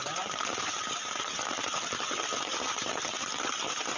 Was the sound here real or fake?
fake